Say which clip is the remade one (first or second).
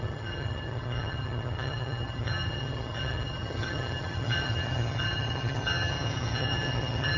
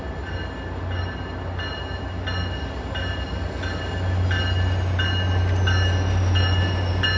first